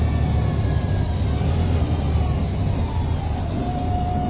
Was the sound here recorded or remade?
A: recorded